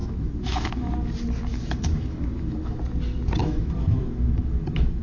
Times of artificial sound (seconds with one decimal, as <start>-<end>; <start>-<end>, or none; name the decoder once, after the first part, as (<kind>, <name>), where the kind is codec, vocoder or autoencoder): 0.0-0.9 (autoencoder, DAC-VAE); 1.5-2.8; 3.4-5.0